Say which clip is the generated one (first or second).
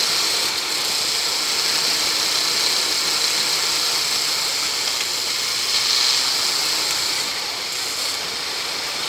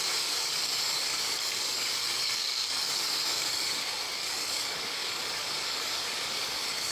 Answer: second